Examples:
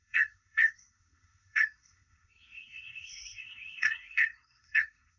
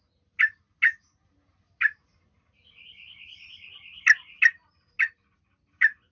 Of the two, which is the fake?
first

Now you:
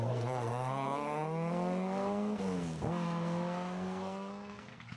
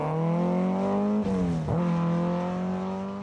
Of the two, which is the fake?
first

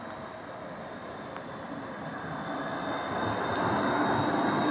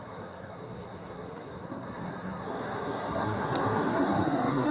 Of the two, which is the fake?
second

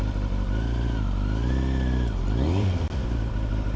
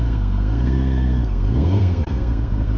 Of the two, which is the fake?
second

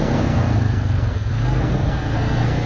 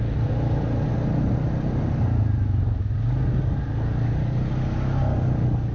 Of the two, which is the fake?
first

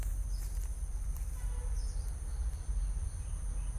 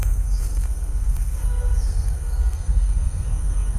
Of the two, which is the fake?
second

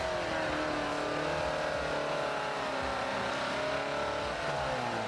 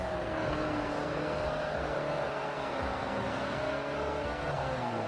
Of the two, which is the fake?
second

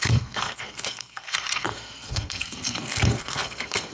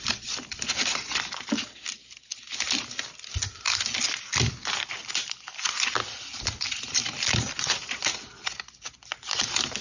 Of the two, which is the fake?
first